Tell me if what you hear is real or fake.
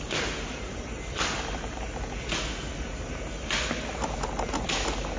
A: real